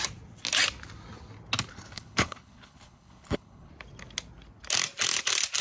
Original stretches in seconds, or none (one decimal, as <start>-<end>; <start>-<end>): 0.0-1.7; 3.7-5.6